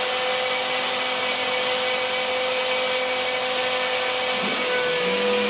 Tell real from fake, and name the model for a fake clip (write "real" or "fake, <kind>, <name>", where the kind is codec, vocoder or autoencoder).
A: real